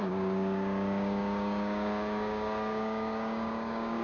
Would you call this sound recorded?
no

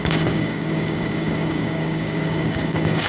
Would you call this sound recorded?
no